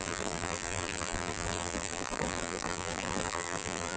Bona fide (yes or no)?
no